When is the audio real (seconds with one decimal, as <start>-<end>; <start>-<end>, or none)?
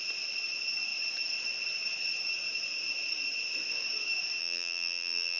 0.0-4.4